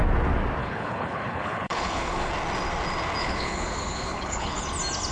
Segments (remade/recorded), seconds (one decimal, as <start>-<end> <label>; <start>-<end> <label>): 0.0-0.6 recorded; 0.6-2.3 remade; 2.3-3.2 recorded; 3.2-4.6 remade; 4.6-5.1 recorded